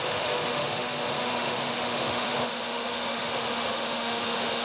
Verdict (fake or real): fake